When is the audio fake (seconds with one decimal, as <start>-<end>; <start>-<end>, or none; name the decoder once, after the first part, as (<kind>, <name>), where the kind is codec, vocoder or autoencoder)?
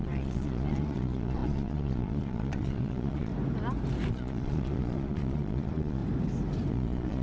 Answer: 0.0-3.3 (vocoder, Vocos); 4.1-6.0; 6.7-7.2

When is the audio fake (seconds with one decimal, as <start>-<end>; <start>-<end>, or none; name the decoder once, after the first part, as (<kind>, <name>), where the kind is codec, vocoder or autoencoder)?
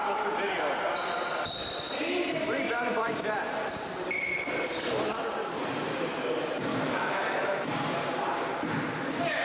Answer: 6.7-7.7 (autoencoder, DAC-VAE)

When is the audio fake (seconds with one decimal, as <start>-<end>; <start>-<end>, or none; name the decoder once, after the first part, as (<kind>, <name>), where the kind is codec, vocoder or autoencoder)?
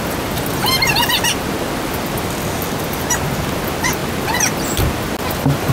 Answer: none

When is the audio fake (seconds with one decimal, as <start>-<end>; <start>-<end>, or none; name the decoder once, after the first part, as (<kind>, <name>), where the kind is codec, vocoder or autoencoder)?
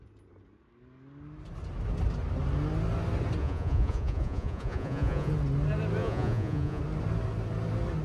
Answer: 3.4-5.3 (vocoder, Vocos); 6.0-6.8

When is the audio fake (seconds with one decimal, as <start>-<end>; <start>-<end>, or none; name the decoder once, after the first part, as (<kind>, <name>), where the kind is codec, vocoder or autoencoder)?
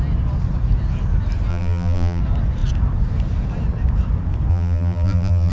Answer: 1.5-2.2 (vocoder, BigVGAN v2); 4.5-5.5